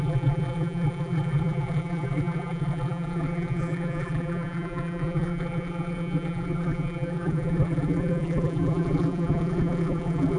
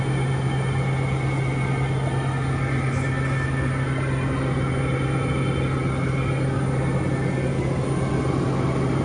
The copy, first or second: first